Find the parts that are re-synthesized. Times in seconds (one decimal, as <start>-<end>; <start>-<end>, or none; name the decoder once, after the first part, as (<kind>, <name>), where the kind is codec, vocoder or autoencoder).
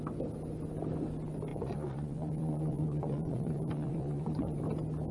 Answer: 1.5-4.6 (vocoder, Vocos)